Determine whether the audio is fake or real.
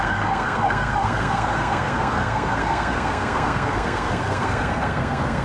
fake